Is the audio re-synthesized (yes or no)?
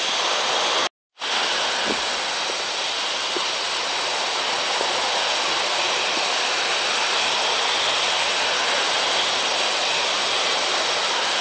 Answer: no